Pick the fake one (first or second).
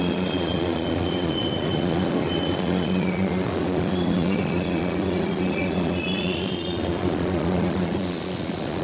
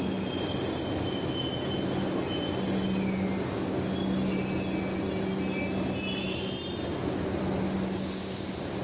first